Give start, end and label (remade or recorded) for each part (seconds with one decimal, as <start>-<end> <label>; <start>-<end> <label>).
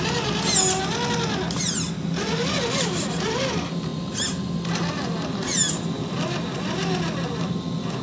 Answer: 0.0-8.0 recorded